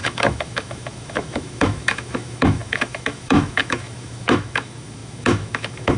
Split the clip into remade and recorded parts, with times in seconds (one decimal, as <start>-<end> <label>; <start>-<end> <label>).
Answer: 0.0-6.0 remade